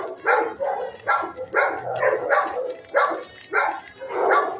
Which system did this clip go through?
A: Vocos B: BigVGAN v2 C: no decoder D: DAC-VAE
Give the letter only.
C